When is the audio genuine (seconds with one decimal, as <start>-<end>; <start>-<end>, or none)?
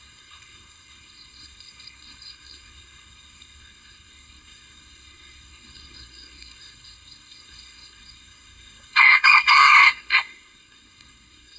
none